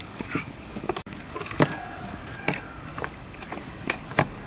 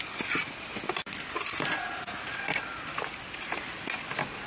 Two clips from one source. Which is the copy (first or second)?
first